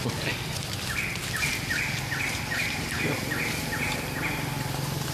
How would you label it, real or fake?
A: real